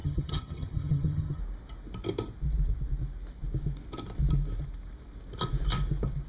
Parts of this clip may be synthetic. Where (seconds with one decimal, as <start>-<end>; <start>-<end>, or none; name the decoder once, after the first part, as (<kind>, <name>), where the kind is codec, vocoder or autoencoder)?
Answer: 0.0-1.4 (vocoder, HiFi-GAN)